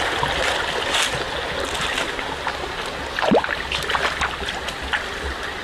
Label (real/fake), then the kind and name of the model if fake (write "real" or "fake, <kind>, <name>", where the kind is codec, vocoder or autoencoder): real